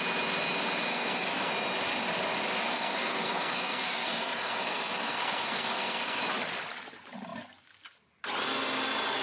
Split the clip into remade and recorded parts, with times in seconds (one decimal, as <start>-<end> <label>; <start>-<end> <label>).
0.0-0.9 recorded; 0.9-1.5 remade; 1.5-2.7 recorded; 2.7-6.2 remade; 6.2-9.2 recorded